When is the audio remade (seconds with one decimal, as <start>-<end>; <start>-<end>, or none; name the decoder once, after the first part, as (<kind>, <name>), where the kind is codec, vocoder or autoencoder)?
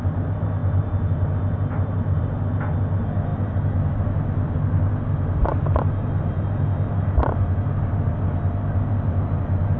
none